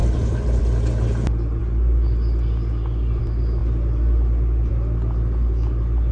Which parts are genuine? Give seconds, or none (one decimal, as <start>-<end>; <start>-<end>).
0.6-6.1